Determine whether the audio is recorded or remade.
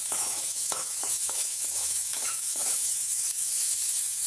remade